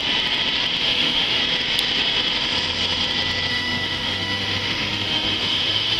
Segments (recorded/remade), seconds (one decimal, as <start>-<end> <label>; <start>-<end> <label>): 0.0-0.8 recorded; 0.8-1.4 remade; 1.4-3.5 recorded; 3.5-6.0 remade